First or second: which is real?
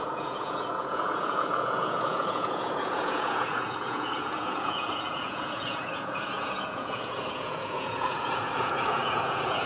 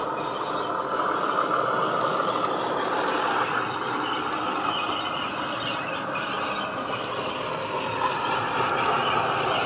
second